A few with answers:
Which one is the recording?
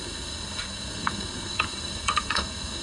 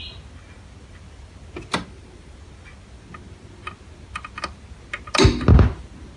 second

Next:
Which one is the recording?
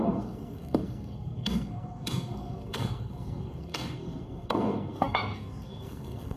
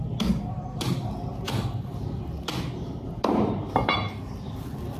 second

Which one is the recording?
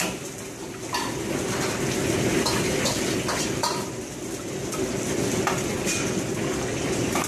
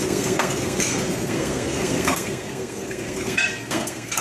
first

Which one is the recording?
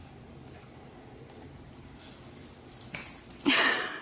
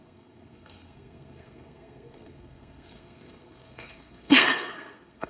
first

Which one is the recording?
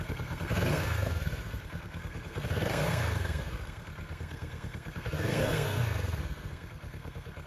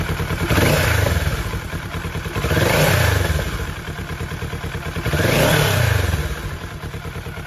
second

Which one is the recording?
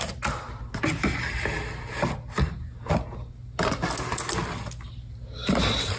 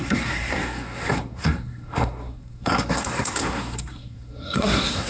first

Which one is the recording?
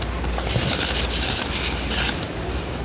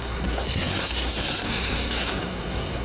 first